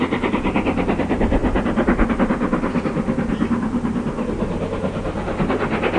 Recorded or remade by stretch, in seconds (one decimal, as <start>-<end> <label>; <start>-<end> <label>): 0.0-6.0 recorded